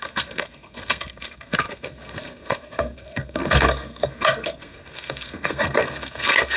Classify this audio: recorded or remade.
remade